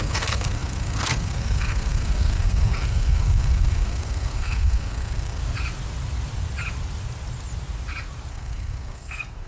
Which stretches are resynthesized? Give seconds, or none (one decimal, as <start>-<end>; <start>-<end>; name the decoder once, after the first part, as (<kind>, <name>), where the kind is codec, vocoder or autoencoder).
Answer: 0.0-5.4 (codec, SNAC); 8.3-9.5

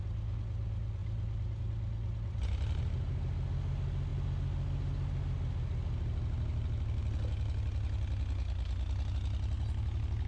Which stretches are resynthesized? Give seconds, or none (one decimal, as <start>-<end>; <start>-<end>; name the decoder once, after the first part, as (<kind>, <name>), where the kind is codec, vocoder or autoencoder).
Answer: none

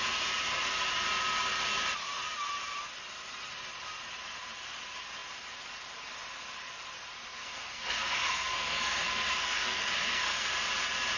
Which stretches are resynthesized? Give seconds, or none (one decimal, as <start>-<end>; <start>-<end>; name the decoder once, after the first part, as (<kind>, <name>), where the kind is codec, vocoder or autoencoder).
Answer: 7.3-10.5 (codec, SNAC)

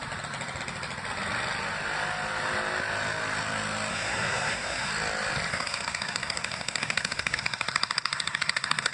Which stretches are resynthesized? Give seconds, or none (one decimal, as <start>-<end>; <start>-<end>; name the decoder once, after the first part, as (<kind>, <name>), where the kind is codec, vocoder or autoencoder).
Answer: 3.9-4.9 (codec, SNAC); 5.5-8.9